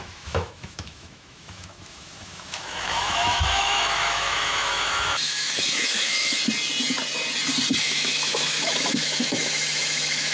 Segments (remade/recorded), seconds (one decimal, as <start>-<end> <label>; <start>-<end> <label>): 0.0-6.4 remade; 6.4-7.8 recorded; 7.8-10.3 remade